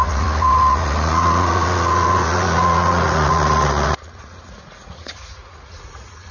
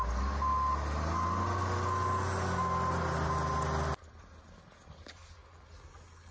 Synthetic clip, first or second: first